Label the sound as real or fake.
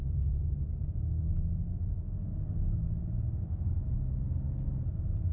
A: real